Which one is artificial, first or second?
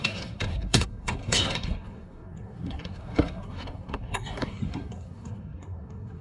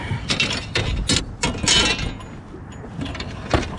first